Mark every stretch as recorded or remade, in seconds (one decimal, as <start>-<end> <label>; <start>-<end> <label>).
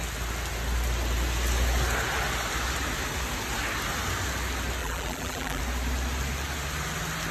0.0-4.8 recorded; 4.8-5.6 remade; 5.6-7.3 recorded